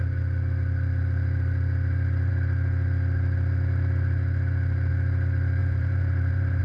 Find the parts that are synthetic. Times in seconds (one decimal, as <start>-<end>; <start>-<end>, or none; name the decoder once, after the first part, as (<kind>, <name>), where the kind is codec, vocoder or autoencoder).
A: 5.6-6.6 (vocoder, BigVGAN v2)